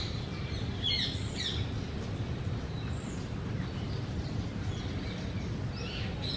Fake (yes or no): yes